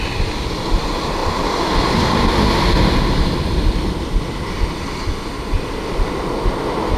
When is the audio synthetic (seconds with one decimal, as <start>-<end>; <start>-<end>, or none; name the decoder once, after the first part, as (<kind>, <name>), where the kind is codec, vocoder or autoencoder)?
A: none